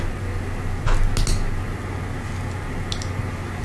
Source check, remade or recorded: recorded